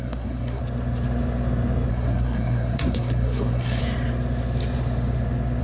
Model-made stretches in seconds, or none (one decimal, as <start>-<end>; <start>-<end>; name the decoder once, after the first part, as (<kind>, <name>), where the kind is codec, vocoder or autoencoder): 0.0-0.6 (codec, SNAC); 1.9-3.8

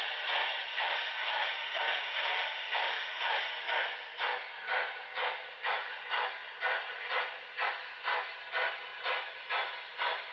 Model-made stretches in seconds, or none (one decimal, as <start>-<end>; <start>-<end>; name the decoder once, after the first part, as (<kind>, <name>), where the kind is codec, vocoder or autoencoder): 0.7-3.5 (autoencoder, DAC-VAE)

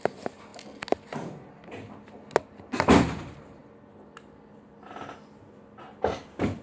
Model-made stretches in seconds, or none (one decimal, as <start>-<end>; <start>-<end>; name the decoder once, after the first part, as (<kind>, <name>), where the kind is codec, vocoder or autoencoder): 3.6-5.1 (vocoder, BigVGAN v2)

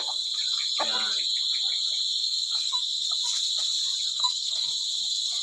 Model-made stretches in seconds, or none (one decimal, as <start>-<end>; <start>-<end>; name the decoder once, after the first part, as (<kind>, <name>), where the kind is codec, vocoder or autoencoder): 2.2-3.1 (codec, SNAC); 4.1-4.7